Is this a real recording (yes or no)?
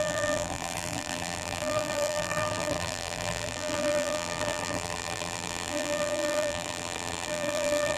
no